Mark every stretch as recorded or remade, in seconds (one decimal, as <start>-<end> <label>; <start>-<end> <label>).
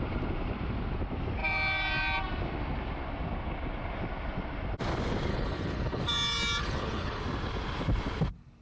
0.0-5.3 recorded; 5.3-6.0 remade; 6.0-6.6 recorded; 6.6-7.2 remade; 7.2-8.6 recorded